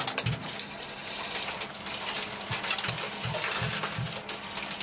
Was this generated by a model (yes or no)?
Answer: no